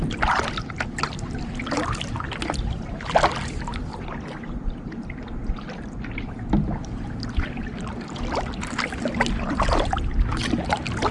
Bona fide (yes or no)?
yes